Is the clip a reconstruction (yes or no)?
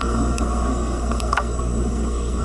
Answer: yes